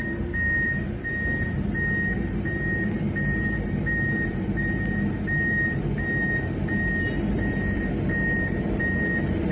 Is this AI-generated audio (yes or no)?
yes